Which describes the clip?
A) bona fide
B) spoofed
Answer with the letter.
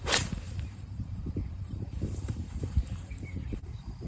B